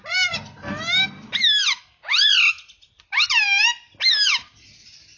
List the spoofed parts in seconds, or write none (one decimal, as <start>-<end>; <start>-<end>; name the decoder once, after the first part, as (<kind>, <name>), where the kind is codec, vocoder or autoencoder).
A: none